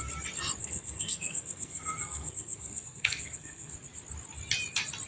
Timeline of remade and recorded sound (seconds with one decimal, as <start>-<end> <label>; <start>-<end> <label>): 0.0-0.6 recorded; 0.6-3.7 remade; 3.7-5.1 recorded